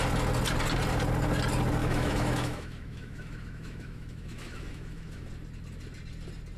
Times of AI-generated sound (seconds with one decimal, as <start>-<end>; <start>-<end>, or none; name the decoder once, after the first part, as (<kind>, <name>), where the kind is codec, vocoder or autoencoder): 1.8-5.3 (autoencoder, DAC-VAE)

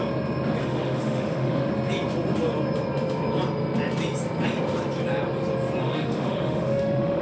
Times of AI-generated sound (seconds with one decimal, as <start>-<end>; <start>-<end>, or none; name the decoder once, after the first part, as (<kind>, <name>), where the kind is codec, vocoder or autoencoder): 0.6-1.7 (autoencoder, DAC-VAE); 5.8-7.2

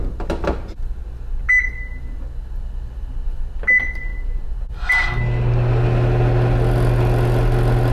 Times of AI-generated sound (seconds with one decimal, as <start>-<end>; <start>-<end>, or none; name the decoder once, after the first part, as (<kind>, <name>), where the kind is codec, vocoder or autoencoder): none

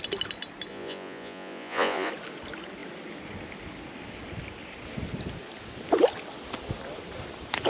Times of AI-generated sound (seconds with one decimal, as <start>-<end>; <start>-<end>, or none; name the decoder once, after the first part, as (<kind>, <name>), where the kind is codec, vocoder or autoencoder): 0.7-2.1 (vocoder, Vocos)

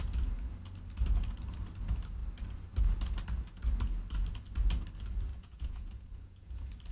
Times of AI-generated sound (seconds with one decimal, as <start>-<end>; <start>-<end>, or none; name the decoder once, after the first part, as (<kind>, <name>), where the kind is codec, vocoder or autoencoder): 5.3-6.5 (vocoder, Vocos)